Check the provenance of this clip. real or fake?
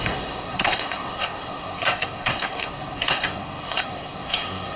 fake